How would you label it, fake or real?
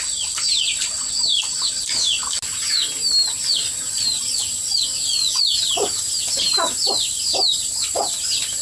real